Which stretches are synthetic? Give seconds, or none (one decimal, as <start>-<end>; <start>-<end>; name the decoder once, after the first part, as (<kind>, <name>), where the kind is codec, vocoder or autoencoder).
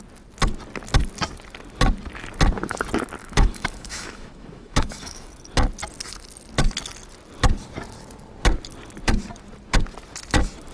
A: 3.2-5.3 (autoencoder, DAC-VAE)